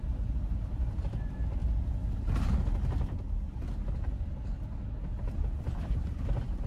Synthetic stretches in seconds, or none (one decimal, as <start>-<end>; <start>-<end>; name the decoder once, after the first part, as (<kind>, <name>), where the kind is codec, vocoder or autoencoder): 0.0-1.6 (vocoder, BigVGAN v2); 5.6-6.7